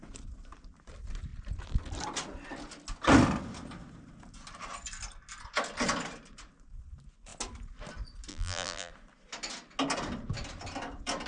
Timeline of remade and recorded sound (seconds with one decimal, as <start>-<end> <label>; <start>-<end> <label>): 0.0-8.3 recorded; 8.3-8.9 remade; 8.9-11.3 recorded

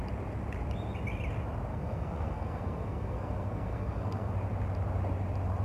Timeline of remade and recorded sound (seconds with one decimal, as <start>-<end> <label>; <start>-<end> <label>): 0.0-1.7 recorded; 1.7-4.3 remade; 4.3-5.6 recorded

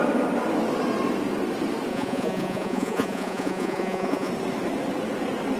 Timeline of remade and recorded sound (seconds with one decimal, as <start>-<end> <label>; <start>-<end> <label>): 0.0-1.9 recorded; 1.9-4.3 remade; 4.3-5.6 recorded

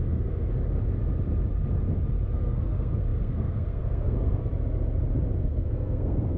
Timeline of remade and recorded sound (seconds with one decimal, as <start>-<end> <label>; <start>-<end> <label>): 0.0-0.5 remade; 0.5-2.3 recorded; 2.3-4.4 remade; 4.4-5.4 recorded; 5.4-6.4 remade

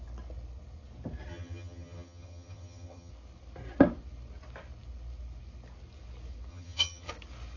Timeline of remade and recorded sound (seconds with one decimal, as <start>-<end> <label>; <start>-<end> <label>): 0.0-1.3 recorded; 1.3-3.1 remade; 3.1-6.5 recorded; 6.5-7.1 remade; 7.1-7.6 recorded

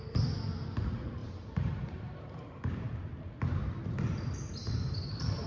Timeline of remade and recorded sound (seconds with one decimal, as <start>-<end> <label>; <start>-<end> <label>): 0.0-1.2 recorded; 1.2-2.9 remade; 2.9-4.6 recorded; 4.6-5.1 remade; 5.1-5.5 recorded